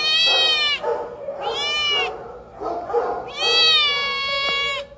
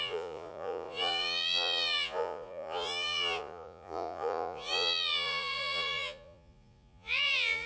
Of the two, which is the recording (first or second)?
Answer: first